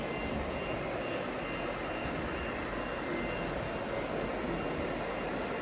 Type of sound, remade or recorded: recorded